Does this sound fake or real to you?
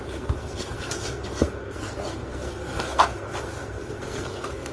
fake